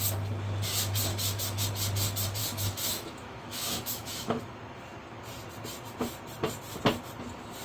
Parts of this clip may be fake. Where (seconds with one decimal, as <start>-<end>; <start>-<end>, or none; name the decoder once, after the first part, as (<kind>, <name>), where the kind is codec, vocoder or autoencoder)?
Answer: 1.1-1.6 (autoencoder, DAC-VAE); 2.4-4.4

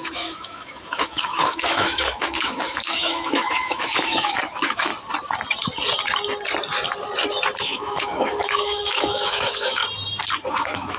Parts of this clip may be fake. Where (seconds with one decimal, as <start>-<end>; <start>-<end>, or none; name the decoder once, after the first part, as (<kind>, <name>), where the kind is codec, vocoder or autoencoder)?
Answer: 0.0-4.9 (autoencoder, DAC-VAE); 7.6-9.8; 10.5-11.0

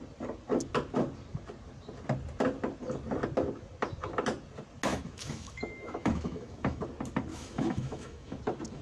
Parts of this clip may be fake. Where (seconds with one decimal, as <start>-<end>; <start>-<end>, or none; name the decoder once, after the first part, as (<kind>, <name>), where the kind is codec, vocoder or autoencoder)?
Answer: 4.9-6.8 (autoencoder, DAC-VAE); 7.3-8.4

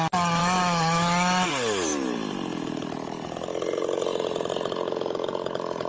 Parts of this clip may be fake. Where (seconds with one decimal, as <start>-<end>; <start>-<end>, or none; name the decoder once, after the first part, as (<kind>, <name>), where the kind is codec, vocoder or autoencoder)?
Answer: 0.4-1.5 (autoencoder, DAC-VAE)

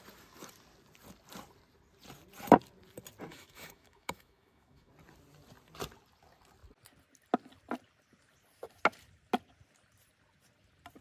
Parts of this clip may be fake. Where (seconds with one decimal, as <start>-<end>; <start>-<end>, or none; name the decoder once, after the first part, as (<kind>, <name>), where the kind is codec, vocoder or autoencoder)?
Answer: 3.3-4.9 (autoencoder, DAC-VAE)